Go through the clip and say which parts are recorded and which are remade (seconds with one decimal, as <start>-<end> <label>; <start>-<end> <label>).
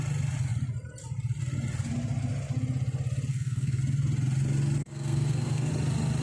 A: 0.0-3.3 recorded; 3.3-3.8 remade; 3.8-4.8 recorded; 4.8-5.7 remade; 5.7-6.2 recorded